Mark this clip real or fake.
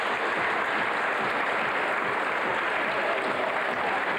real